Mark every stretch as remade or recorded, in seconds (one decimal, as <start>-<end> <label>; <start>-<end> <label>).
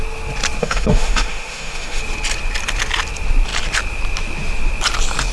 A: 0.0-0.6 recorded; 0.6-2.0 remade; 2.0-5.3 recorded